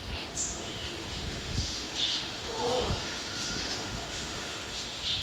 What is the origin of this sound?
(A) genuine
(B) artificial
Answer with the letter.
B